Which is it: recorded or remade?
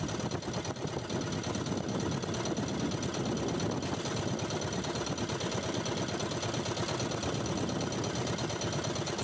recorded